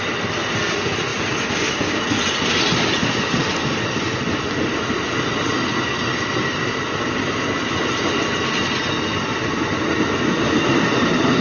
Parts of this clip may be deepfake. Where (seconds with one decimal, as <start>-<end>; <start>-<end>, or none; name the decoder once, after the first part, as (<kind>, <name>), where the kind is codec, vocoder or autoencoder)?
none